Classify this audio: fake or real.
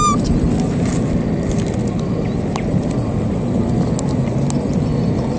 real